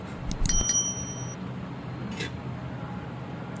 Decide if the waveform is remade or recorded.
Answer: recorded